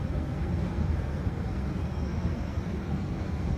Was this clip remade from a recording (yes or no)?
yes